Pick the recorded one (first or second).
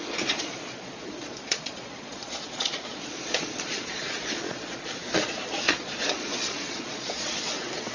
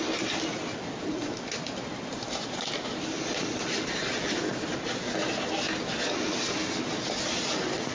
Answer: second